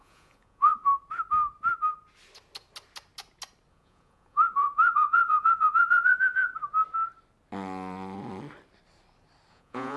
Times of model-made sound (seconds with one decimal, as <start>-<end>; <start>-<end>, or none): 0.0-0.8; 3.7-6.5; 9.5-10.0